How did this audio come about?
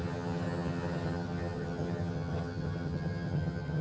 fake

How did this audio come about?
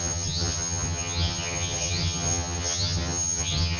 fake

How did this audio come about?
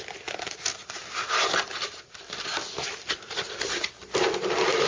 real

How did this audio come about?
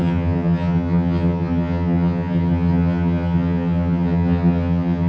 fake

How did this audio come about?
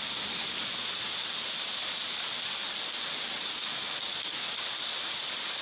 real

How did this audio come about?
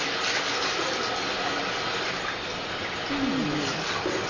real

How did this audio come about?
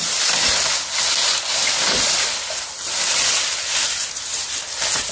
real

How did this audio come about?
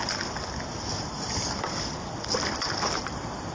real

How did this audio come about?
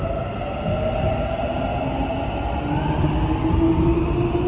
real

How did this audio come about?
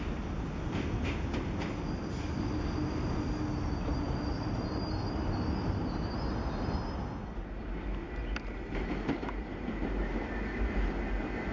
real